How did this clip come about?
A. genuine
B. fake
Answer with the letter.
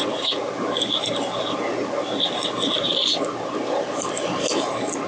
A